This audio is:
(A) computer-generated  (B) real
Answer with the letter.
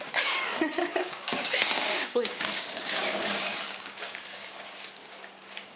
A